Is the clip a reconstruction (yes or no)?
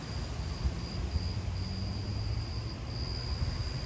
no